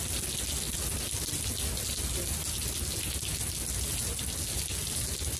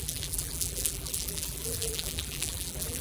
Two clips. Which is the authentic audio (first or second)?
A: first